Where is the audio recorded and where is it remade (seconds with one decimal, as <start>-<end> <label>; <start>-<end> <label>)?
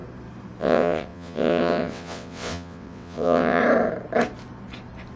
0.0-0.6 recorded; 0.6-3.6 remade; 3.6-5.2 recorded